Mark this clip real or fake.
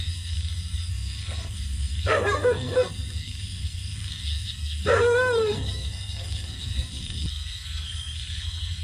fake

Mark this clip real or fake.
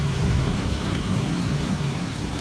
fake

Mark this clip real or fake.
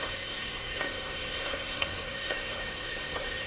fake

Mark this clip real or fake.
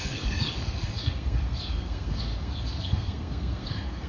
fake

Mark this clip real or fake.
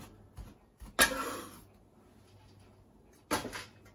real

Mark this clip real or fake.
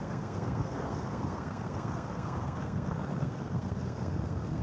fake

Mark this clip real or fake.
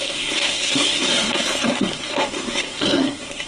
fake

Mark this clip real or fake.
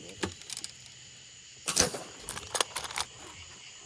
real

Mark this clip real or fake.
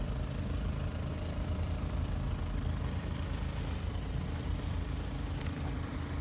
real